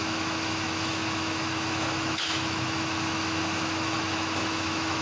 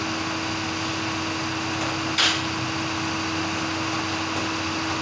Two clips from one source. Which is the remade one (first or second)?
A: first